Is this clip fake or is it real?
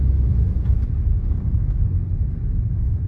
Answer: real